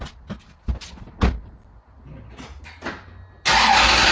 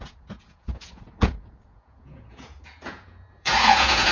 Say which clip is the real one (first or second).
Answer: first